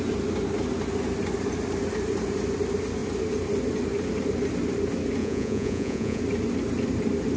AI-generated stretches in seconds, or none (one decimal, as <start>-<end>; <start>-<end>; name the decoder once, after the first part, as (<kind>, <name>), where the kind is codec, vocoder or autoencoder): 5.2-6.2 (vocoder, Vocos)